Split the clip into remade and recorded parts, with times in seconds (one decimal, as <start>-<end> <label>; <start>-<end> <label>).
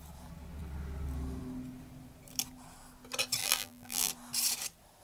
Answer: 0.0-3.4 recorded; 3.4-4.1 remade; 4.1-5.0 recorded